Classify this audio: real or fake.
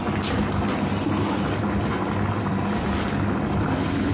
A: real